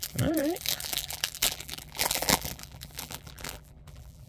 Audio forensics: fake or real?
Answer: fake